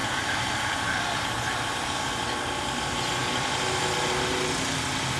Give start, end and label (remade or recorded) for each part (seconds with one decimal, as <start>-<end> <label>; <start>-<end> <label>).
0.0-5.2 recorded